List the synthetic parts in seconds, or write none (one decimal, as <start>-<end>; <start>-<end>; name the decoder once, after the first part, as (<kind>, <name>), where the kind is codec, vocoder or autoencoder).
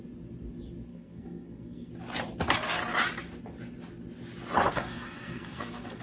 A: 0.9-1.9 (codec, SNAC); 4.7-6.0